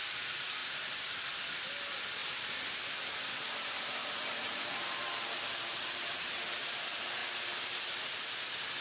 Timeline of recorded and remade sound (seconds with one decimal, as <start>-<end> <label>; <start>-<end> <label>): 0.0-0.6 recorded; 0.6-1.4 remade; 1.4-4.0 recorded; 4.0-6.7 remade; 6.7-8.8 recorded